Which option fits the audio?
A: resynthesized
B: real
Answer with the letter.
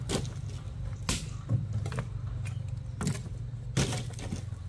B